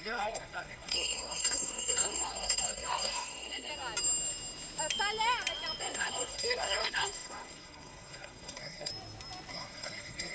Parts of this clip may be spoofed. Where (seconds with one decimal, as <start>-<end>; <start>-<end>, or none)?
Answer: 0.0-3.7; 5.8-8.9; 9.5-10.3